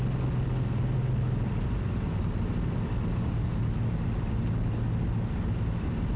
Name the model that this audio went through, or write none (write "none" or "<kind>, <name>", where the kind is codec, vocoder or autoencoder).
none